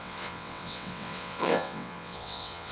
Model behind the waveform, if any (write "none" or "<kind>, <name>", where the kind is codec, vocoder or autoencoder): vocoder, WaveNeXt